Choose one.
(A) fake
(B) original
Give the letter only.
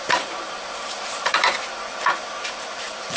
A